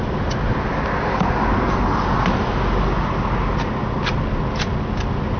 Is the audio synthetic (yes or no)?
no